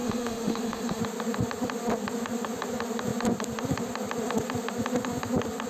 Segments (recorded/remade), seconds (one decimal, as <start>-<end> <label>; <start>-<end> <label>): 0.0-1.0 remade; 1.0-5.7 recorded